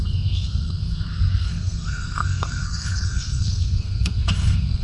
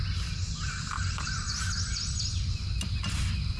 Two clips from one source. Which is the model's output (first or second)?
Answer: first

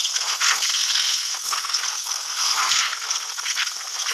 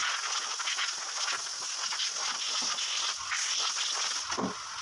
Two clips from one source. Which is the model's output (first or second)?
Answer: first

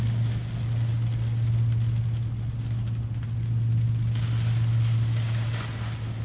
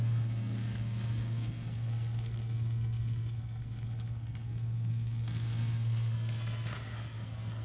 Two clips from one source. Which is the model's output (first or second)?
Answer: second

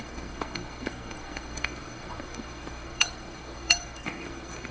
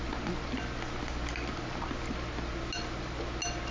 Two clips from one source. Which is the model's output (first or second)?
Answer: first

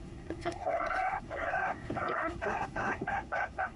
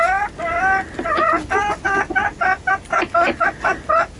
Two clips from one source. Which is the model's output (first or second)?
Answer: first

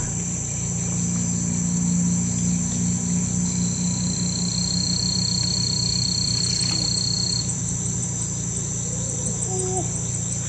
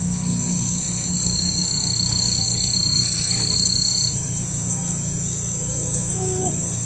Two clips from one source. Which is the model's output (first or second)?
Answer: second